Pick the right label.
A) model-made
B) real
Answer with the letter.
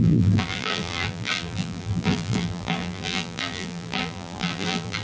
A